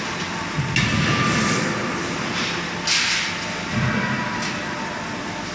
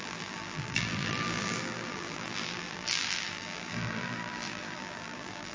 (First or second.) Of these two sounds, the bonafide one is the first